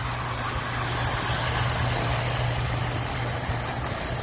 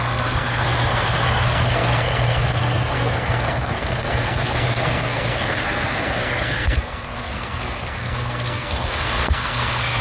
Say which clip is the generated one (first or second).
second